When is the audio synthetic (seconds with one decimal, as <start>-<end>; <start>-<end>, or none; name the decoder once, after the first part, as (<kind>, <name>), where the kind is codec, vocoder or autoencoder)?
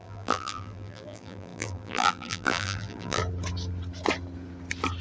0.0-3.2 (vocoder, BigVGAN v2)